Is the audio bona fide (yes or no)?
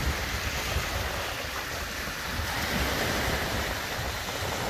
yes